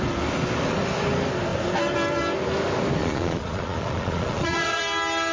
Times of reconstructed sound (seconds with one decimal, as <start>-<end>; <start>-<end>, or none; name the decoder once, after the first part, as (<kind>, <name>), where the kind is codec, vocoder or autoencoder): 3.0-4.8 (vocoder, Vocos)